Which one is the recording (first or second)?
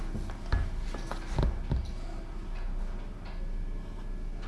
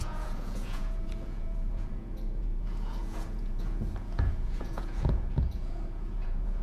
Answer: first